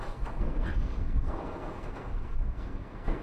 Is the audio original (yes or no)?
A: no